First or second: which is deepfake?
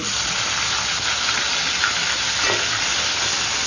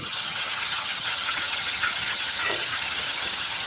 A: second